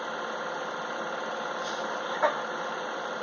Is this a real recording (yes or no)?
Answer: yes